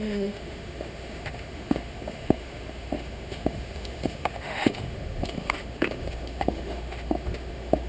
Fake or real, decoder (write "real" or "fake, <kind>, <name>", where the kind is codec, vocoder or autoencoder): fake, autoencoder, DAC-VAE